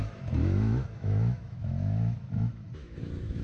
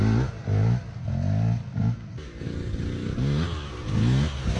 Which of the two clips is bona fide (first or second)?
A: second